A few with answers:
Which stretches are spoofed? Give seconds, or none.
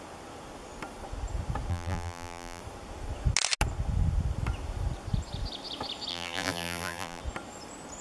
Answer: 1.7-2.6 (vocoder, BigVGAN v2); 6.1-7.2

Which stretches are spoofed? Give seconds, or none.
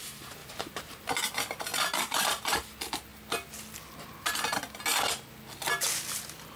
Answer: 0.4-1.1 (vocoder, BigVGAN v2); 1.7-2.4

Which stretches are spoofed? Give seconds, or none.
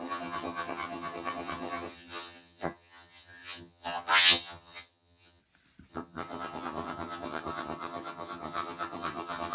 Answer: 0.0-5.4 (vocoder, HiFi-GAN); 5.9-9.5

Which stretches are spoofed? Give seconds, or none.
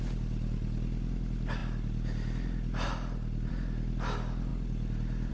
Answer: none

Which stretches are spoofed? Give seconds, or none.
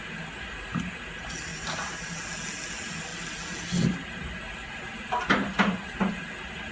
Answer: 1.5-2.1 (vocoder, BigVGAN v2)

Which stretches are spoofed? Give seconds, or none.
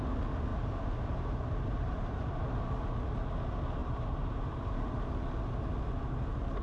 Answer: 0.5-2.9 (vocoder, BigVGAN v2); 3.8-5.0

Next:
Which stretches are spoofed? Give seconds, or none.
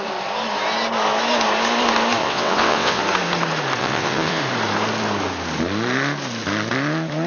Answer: 2.2-3.0 (vocoder, WaveNeXt); 3.8-4.4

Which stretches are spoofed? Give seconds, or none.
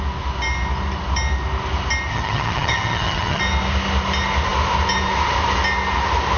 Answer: 2.1-3.4 (vocoder, HiFi-GAN)